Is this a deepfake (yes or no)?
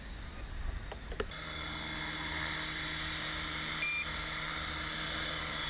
no